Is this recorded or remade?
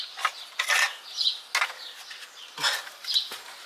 recorded